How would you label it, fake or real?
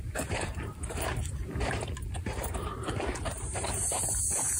fake